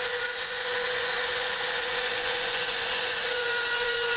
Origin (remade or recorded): remade